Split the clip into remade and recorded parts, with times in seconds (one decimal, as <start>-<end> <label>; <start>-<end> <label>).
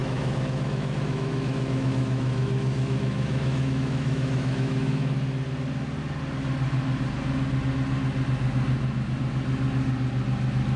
0.0-5.1 remade; 5.1-10.8 recorded